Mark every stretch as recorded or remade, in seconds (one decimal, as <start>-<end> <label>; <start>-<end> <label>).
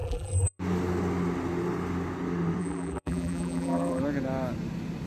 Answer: 0.0-0.6 remade; 0.6-2.6 recorded; 2.6-4.0 remade; 4.0-5.1 recorded